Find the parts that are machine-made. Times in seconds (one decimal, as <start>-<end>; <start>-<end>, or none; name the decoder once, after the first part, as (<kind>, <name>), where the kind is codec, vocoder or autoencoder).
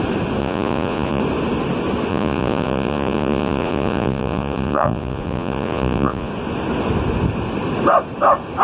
0.4-1.2 (vocoder, Vocos); 2.1-6.3